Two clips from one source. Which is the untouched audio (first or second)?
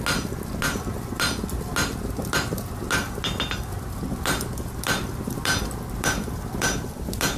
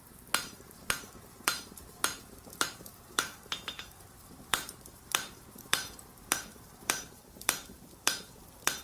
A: first